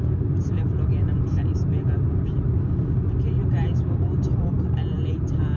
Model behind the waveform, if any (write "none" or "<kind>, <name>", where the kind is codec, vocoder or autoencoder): none